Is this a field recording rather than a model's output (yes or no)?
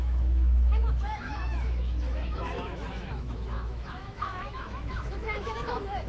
no